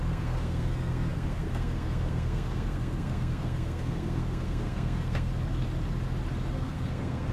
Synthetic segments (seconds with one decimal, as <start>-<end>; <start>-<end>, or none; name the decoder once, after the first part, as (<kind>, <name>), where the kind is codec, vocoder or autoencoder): 0.0-5.3 (codec, SNAC); 6.5-7.3